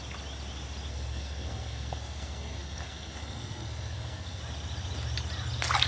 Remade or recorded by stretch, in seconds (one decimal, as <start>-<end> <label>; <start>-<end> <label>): 0.0-0.9 recorded; 0.9-4.4 remade; 4.4-5.9 recorded